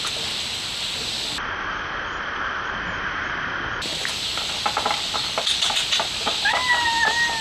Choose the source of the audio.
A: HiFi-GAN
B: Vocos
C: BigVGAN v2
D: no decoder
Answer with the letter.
D